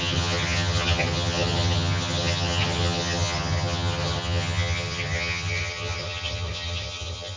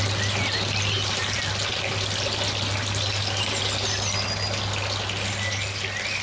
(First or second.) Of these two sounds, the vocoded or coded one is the first